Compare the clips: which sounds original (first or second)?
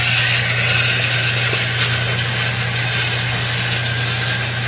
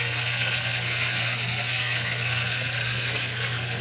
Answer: first